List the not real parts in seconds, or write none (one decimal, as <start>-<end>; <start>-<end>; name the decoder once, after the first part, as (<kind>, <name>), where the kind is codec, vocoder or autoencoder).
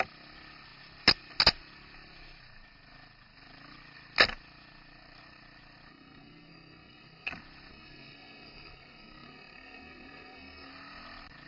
5.9-7.3 (codec, SNAC); 7.7-10.7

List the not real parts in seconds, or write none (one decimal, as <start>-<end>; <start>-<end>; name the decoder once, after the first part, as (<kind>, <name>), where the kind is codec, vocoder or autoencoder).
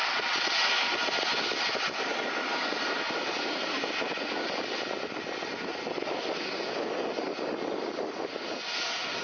0.0-0.7 (vocoder, WaveNeXt)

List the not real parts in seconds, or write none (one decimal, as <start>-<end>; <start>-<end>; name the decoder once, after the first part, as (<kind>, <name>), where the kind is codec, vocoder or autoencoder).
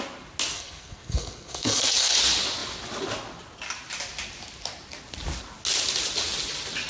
0.5-2.1 (codec, SNAC)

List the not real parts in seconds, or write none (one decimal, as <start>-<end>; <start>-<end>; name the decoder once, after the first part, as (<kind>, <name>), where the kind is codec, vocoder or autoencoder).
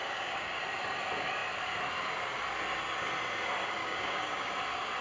0.0-0.6 (codec, DAC); 3.8-4.5